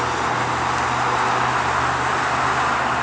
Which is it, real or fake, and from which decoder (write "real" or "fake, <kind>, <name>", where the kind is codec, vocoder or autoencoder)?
real